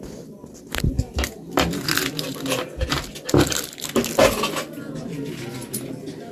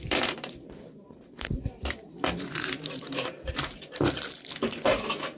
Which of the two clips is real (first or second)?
first